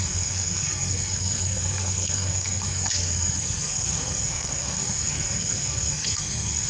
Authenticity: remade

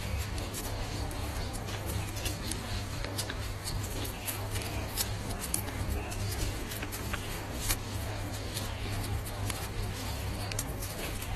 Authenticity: remade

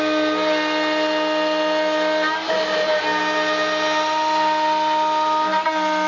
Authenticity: recorded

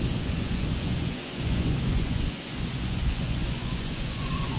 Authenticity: remade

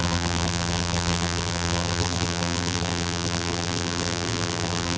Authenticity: remade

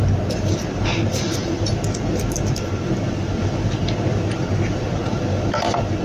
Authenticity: recorded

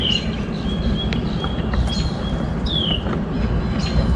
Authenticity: recorded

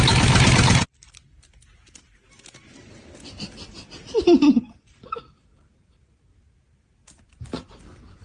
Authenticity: recorded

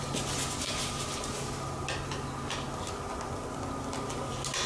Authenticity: recorded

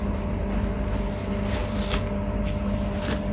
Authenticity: recorded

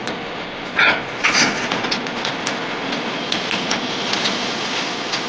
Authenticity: remade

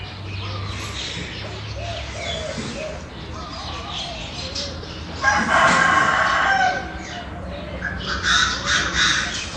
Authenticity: recorded